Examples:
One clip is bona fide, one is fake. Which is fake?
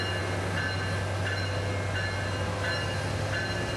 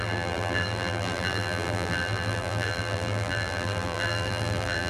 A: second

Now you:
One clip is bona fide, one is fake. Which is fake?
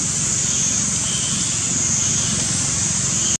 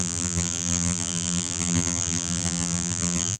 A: second